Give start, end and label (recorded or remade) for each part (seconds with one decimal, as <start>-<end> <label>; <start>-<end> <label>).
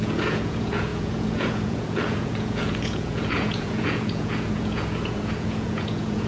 0.0-6.3 remade